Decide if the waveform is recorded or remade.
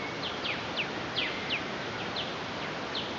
recorded